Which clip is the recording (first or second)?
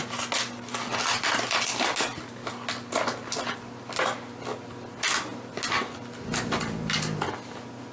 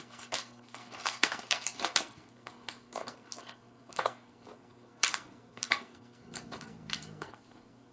first